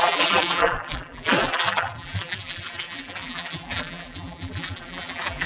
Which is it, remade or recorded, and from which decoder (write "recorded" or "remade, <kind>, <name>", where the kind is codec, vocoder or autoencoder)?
remade, vocoder, BigVGAN v2